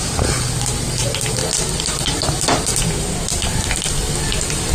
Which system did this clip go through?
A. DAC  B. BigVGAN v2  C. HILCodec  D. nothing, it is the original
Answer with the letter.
D